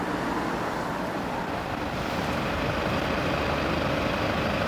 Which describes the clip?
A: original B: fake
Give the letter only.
A